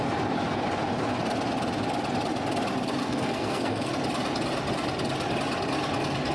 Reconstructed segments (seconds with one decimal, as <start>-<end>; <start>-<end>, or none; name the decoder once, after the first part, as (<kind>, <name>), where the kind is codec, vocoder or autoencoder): 3.0-3.9 (codec, SNAC)